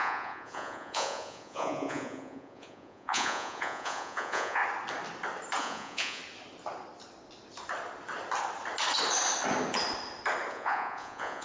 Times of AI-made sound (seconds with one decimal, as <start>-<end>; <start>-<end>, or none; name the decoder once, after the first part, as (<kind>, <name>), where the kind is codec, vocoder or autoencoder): 0.0-4.6 (vocoder, Vocos); 5.6-6.2; 10.5-11.4